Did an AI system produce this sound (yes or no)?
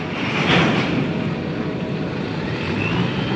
no